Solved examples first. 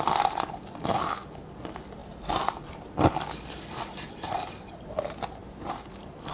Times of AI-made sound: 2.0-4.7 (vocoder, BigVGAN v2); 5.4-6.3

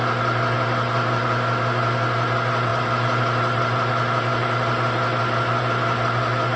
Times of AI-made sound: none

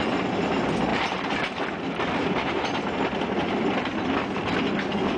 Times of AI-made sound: 0.9-3.5 (vocoder, BigVGAN v2)

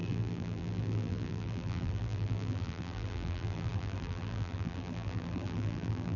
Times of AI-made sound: 0.0-6.2 (vocoder, BigVGAN v2)

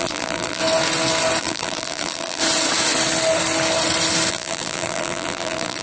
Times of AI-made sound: 0.0-0.6 (vocoder, BigVGAN v2); 1.4-2.4; 4.3-5.8